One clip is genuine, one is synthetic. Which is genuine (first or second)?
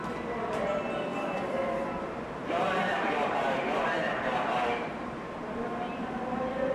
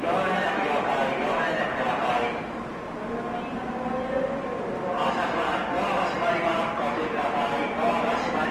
second